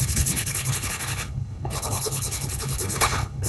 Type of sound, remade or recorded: remade